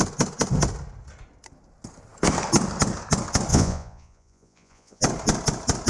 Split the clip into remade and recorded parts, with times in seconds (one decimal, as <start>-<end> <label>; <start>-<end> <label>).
0.0-3.5 recorded; 3.5-5.0 remade; 5.0-5.9 recorded